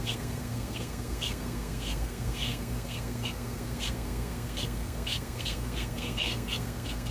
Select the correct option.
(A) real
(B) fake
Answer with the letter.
B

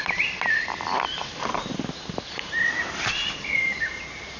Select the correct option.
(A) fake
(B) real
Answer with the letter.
A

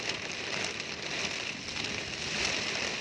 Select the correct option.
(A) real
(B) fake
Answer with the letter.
B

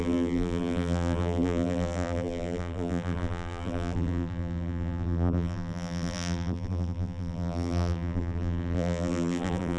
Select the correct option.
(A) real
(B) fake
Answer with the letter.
B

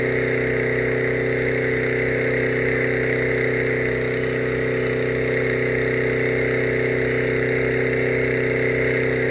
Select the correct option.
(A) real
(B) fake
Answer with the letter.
A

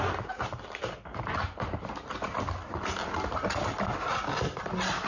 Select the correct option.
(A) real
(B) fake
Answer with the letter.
A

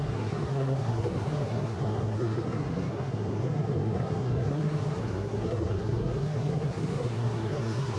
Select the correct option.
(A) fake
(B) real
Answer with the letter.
A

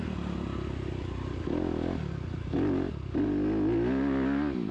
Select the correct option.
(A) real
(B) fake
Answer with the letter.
A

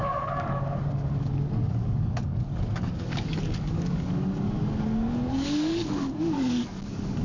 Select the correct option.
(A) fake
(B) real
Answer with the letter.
A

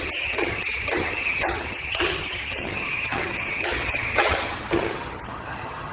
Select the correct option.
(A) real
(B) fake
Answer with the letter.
B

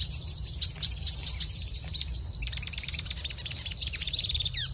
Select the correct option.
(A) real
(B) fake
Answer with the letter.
B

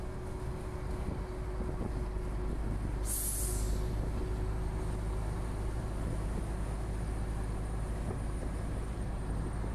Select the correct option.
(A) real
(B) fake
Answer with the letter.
A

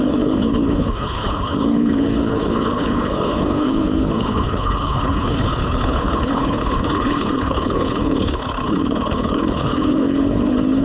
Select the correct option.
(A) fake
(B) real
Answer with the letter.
A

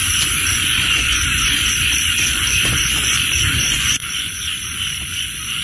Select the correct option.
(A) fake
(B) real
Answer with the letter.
A